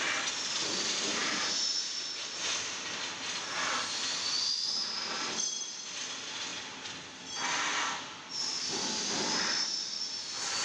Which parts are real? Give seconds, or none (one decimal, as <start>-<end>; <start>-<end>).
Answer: 0.0-10.6